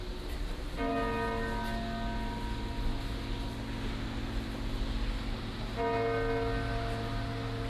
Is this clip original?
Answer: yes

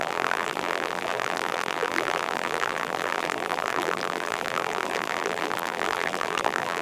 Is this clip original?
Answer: no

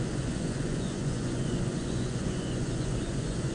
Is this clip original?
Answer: no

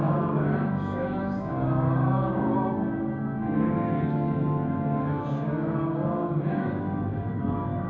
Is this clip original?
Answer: no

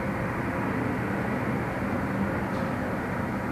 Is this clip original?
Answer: yes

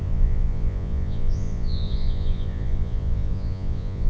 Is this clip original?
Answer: no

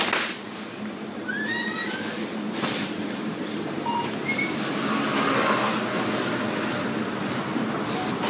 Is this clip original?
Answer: yes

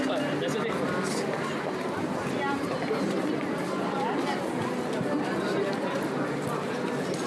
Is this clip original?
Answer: yes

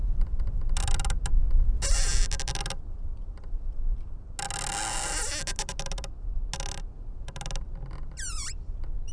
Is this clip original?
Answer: yes